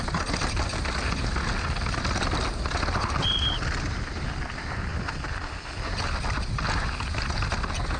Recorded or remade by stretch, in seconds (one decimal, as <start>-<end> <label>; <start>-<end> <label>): 0.0-8.0 recorded